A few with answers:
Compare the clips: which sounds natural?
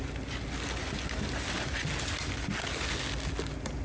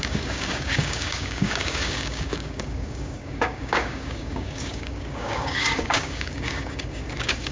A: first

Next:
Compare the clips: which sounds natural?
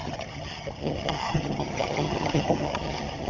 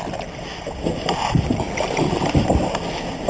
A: second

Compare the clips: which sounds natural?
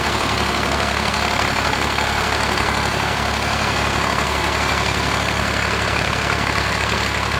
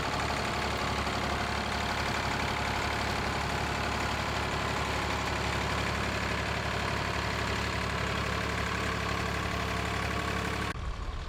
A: second